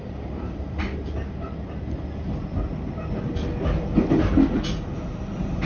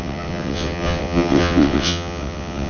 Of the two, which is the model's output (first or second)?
second